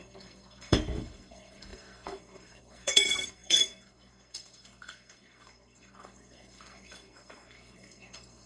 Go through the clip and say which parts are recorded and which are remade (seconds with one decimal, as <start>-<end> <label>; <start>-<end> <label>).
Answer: 0.0-8.5 remade